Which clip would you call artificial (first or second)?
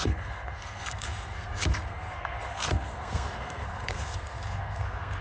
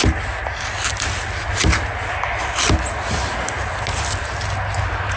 first